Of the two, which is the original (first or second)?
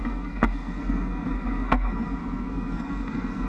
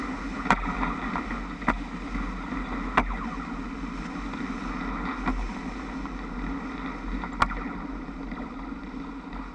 second